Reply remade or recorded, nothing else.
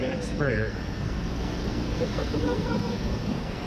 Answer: remade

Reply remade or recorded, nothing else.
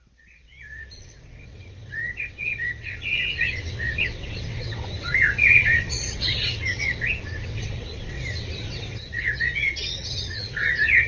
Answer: remade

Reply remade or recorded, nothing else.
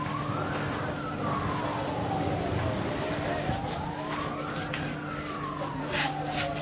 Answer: recorded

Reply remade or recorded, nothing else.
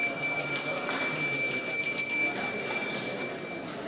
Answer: recorded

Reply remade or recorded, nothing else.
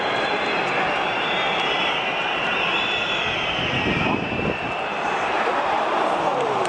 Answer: remade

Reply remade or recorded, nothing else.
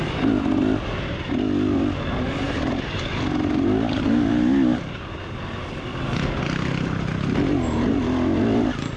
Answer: recorded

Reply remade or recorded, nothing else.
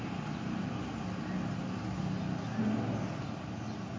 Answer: recorded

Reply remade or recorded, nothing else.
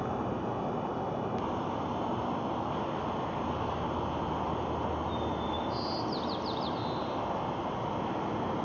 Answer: recorded